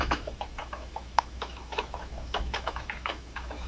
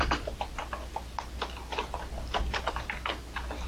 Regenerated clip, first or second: first